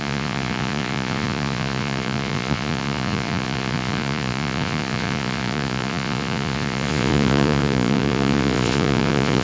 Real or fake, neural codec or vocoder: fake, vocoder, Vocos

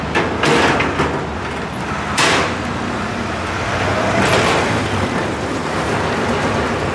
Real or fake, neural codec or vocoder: real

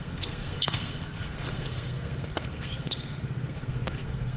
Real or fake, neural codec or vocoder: fake, codec, SNAC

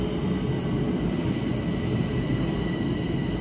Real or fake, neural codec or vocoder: real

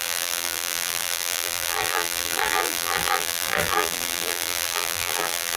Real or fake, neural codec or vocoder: fake, vocoder, BigVGAN v2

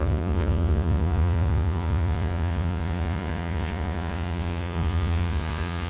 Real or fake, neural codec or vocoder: fake, vocoder, Vocos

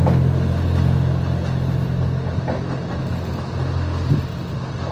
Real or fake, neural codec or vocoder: real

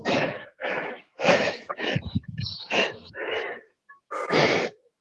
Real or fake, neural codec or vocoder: fake, autoencoder, DAC-VAE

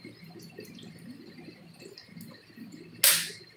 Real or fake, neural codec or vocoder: real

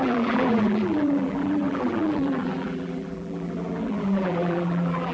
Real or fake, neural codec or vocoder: fake, vocoder, BigVGAN v2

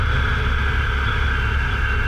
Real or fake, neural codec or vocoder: real